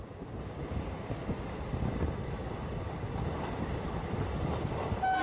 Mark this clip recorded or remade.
remade